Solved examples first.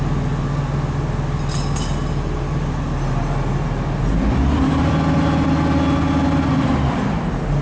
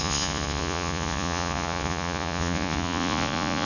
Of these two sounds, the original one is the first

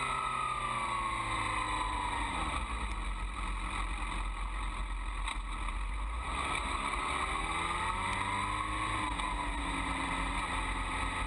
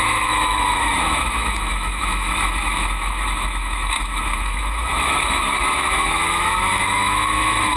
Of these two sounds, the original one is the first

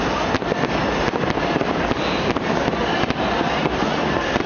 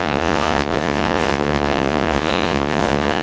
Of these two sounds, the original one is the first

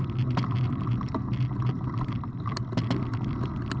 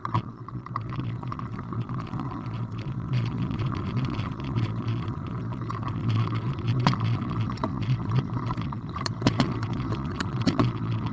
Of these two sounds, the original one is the first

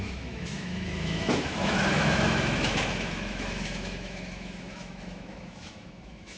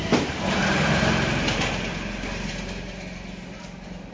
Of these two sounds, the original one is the second